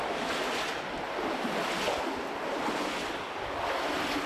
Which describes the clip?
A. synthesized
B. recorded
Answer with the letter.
B